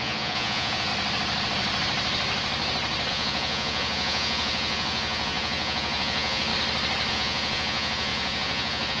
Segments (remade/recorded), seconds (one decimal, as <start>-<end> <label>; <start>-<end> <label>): 0.0-0.9 remade; 0.9-3.1 recorded; 3.1-6.5 remade; 6.5-7.1 recorded; 7.1-9.0 remade